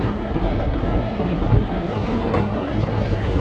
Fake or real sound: fake